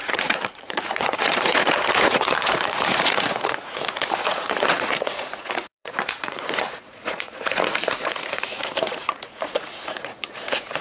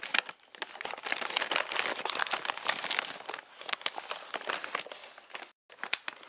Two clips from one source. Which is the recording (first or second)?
second